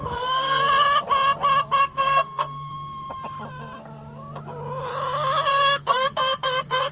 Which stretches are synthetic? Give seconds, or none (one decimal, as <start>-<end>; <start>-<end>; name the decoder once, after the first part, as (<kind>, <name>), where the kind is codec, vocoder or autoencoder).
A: 0.0-0.6 (codec, SNAC); 1.8-2.7; 5.5-6.9